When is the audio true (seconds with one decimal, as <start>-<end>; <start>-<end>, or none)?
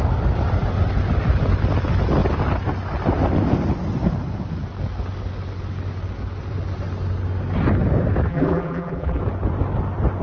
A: 0.0-8.3; 9.2-10.2